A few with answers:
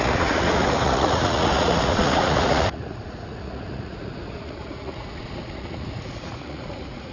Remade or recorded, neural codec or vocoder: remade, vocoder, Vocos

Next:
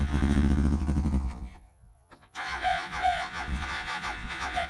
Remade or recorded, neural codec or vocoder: remade, vocoder, Vocos